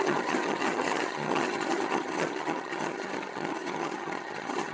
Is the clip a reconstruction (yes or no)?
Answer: yes